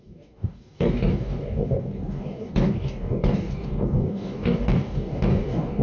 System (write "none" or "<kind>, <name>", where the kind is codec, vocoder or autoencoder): codec, DAC